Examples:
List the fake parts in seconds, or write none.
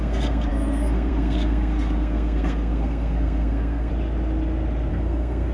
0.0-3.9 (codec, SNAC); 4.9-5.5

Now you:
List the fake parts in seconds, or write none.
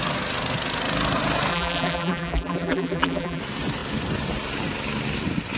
1.5-3.4 (vocoder, BigVGAN v2)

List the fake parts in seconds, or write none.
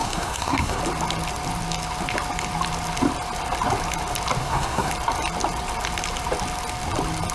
0.0-0.8 (codec, SNAC); 4.4-4.9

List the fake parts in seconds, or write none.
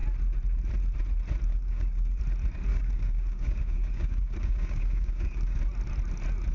1.5-2.2 (codec, DAC); 2.7-5.6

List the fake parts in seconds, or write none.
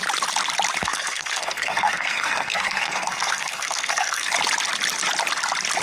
0.8-4.3 (codec, SNAC)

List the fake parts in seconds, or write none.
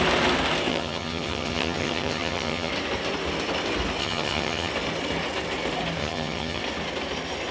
0.7-2.7 (vocoder, HiFi-GAN); 4.0-4.7; 6.0-6.6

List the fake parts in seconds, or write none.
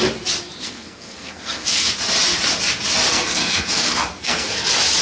0.6-1.9 (codec, SNAC); 3.1-4.6